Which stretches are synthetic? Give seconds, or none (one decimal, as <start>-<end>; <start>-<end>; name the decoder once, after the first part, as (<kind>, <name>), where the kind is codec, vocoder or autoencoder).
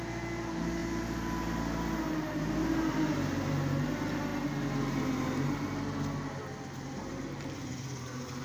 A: none